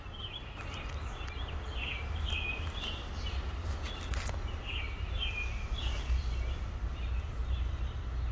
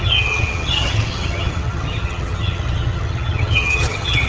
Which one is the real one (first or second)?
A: first